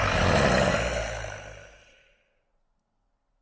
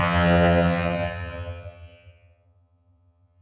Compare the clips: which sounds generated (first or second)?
second